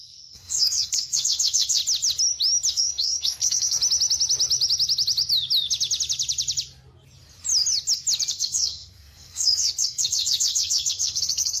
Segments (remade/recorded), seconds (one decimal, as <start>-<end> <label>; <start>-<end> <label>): 0.0-1.8 remade; 1.8-2.7 recorded; 2.7-3.8 remade; 3.8-8.3 recorded; 8.3-11.6 remade